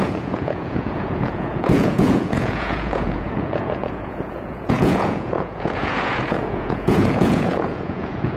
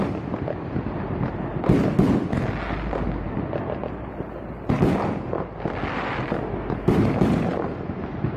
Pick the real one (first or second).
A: second